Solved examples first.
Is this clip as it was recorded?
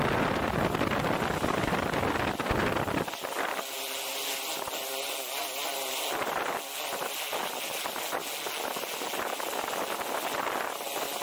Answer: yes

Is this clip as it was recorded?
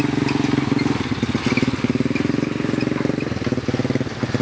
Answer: yes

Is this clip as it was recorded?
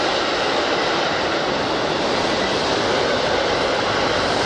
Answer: yes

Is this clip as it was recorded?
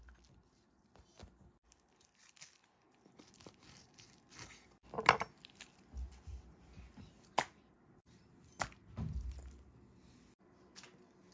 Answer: yes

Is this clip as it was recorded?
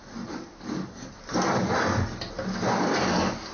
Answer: yes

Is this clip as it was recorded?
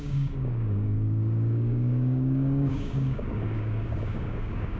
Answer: no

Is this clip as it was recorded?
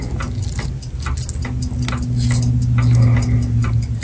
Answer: yes